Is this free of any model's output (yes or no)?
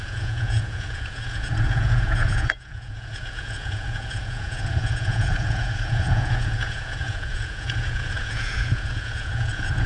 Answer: no